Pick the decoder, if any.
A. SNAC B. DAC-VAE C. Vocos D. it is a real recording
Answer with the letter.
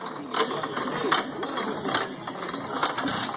D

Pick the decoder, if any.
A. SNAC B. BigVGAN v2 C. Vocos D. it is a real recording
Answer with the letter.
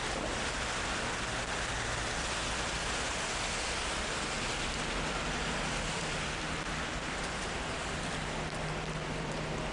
D